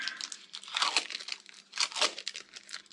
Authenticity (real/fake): real